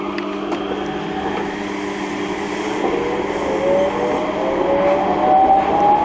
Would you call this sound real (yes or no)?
yes